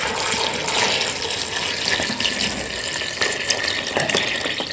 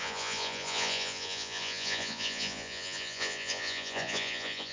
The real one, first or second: first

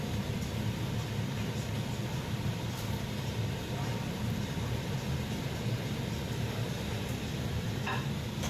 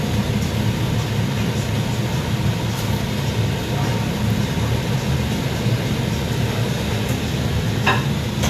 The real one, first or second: second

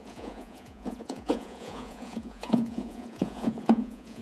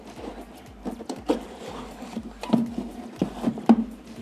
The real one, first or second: second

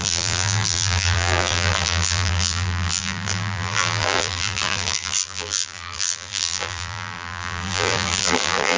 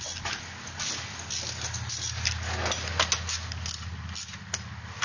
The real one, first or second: second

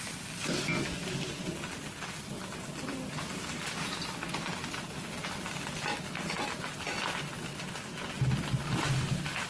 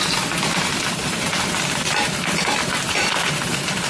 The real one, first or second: first